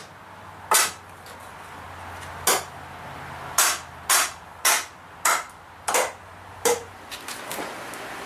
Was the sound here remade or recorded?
recorded